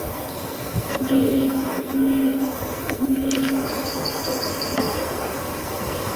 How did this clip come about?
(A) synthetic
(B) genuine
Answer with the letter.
A